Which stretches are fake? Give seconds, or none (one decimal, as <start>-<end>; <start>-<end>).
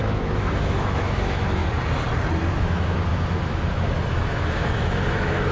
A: 0.0-1.6; 2.5-5.5